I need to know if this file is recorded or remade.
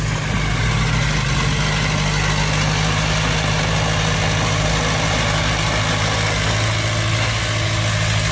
recorded